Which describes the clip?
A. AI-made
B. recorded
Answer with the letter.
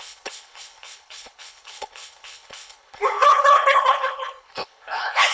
A